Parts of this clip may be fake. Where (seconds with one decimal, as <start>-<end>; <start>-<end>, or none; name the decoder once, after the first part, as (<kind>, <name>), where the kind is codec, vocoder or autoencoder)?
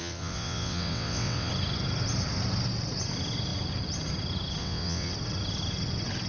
0.0-1.5 (vocoder, WaveNeXt); 4.6-5.1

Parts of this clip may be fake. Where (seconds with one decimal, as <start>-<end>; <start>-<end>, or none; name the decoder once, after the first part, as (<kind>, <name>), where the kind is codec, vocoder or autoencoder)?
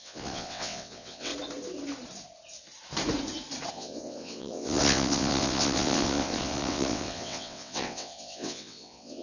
0.0-1.3 (vocoder, WaveNeXt); 3.7-9.2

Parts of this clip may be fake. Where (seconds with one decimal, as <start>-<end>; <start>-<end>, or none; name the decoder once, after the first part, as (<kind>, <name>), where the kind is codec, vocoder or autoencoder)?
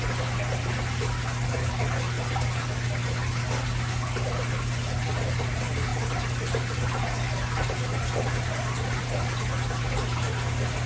none